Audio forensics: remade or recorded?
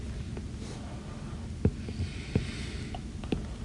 recorded